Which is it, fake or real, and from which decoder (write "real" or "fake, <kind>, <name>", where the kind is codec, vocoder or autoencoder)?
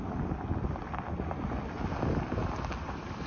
real